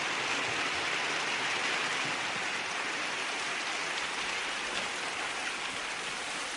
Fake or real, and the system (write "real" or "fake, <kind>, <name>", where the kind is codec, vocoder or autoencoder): real